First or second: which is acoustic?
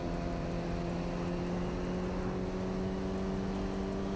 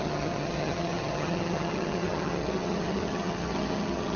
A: first